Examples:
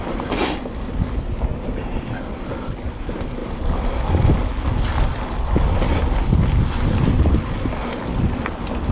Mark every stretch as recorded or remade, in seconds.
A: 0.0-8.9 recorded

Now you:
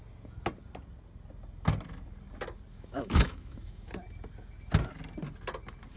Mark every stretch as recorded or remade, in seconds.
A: 0.0-2.7 recorded; 2.7-3.9 remade; 3.9-6.0 recorded

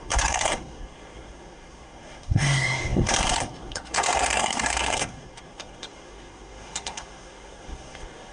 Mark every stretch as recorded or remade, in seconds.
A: 0.0-8.3 remade

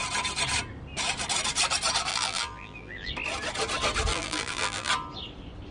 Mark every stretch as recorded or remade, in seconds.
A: 0.0-2.1 recorded; 2.1-3.1 remade; 3.1-4.1 recorded; 4.1-4.9 remade; 4.9-5.7 recorded

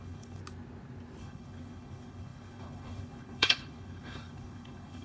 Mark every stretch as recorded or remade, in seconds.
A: 0.0-0.4 remade; 0.4-1.2 recorded; 1.2-5.0 remade

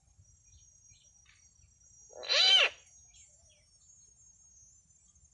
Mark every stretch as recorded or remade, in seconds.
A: 0.0-5.3 recorded

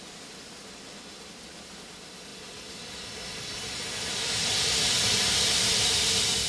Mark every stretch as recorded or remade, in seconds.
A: 0.0-6.5 recorded

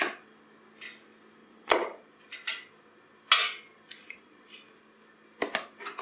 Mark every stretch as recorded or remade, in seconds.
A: 0.0-1.4 recorded; 1.4-2.1 remade; 2.1-4.0 recorded; 4.0-4.6 remade; 4.6-6.0 recorded